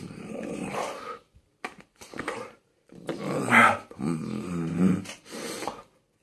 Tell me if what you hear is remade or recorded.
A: recorded